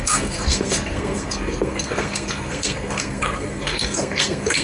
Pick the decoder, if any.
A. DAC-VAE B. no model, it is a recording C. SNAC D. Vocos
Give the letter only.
C